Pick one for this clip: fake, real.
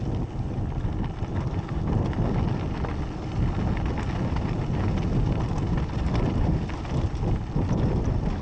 real